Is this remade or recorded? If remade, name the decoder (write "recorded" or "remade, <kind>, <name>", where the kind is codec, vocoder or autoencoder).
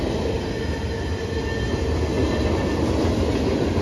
recorded